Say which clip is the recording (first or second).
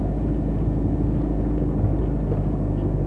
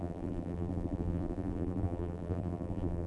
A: first